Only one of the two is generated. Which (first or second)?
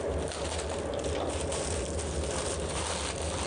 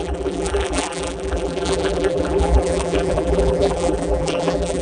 second